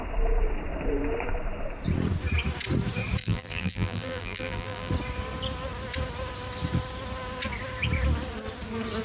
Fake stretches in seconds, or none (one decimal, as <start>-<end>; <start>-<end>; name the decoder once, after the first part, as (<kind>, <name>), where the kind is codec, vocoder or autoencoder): 3.2-4.9 (vocoder, BigVGAN v2)